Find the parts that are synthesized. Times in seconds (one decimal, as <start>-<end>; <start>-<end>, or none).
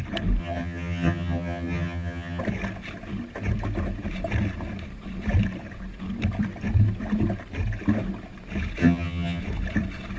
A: 0.4-2.4; 8.8-9.4